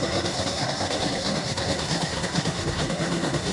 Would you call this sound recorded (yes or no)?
no